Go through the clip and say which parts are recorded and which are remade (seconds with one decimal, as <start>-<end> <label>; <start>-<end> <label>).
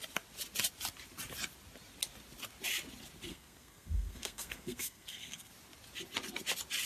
0.0-3.3 recorded; 3.3-5.5 remade; 5.5-6.9 recorded